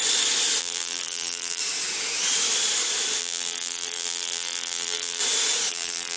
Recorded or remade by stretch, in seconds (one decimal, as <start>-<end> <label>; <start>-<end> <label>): 0.0-0.6 recorded; 0.6-1.6 remade; 1.6-3.2 recorded; 3.2-5.2 remade; 5.2-5.7 recorded; 5.7-6.2 remade